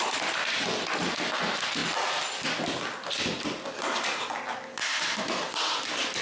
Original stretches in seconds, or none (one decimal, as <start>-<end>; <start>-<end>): 0.0-6.2